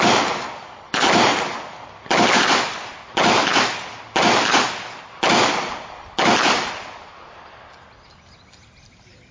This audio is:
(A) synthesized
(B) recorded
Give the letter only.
B